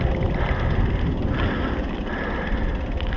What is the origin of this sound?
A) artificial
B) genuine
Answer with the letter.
B